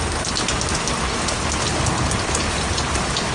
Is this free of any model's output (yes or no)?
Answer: yes